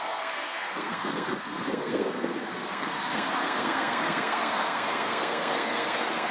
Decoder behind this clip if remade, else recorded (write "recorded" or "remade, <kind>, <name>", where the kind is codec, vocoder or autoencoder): remade, codec, SNAC